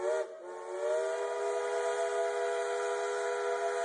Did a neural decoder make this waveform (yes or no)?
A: no